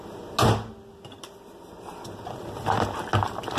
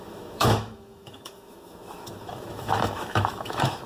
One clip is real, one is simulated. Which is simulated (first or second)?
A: second